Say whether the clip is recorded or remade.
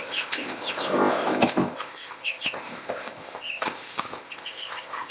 remade